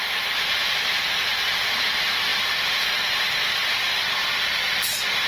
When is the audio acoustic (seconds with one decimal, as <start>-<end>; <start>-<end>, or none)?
0.0-5.3